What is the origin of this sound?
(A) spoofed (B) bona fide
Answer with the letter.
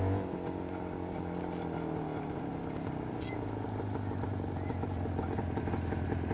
B